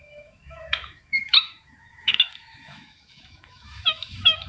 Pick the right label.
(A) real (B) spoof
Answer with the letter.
B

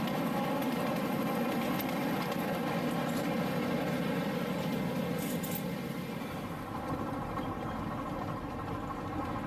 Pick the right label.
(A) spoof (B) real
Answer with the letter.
B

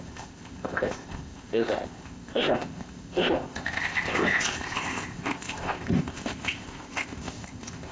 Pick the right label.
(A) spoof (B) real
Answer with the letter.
A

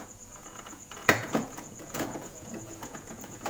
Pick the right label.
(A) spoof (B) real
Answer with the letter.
A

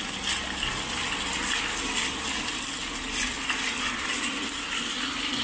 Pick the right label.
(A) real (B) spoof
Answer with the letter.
A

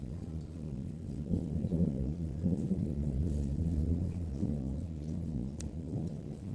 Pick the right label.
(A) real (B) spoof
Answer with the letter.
B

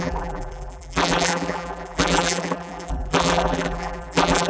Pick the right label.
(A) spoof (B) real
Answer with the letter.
A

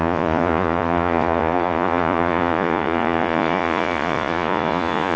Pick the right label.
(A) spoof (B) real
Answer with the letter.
A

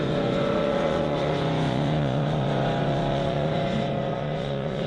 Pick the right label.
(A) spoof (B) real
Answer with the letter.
A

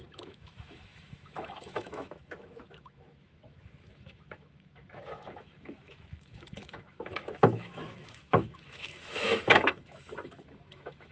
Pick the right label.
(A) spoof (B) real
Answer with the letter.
A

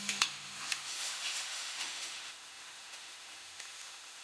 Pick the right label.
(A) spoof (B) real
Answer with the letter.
A